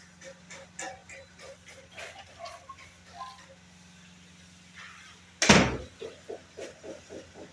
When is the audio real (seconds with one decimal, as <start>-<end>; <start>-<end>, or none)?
0.0-7.5